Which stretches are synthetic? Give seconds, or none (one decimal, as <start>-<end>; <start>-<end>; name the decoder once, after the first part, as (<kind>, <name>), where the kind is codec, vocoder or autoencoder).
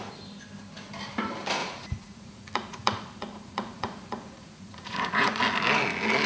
1.6-5.4 (vocoder, Vocos)